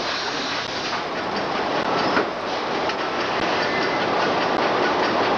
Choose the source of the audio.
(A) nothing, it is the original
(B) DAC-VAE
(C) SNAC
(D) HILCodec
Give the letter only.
A